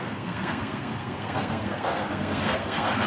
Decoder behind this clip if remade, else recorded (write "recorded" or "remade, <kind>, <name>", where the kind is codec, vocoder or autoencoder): remade, codec, SNAC